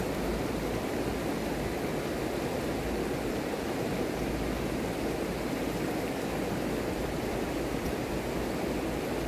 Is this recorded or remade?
recorded